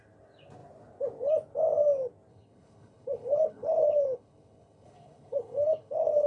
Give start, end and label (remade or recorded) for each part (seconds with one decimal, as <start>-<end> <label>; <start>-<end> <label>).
0.0-2.3 recorded; 2.3-6.3 remade